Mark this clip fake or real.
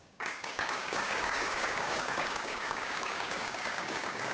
fake